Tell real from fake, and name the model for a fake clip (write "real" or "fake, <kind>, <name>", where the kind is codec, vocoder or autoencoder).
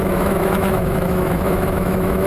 fake, autoencoder, DAC-VAE